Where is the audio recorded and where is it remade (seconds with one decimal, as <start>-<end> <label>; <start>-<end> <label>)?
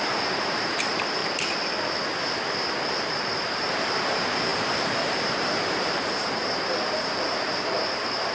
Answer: 0.0-1.2 remade; 1.2-3.0 recorded; 3.0-8.3 remade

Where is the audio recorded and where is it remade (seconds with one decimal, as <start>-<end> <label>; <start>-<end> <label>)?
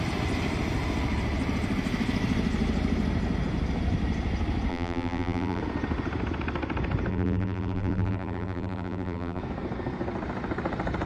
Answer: 0.0-4.7 recorded; 4.7-5.6 remade; 5.6-7.1 recorded; 7.1-9.4 remade; 9.4-11.1 recorded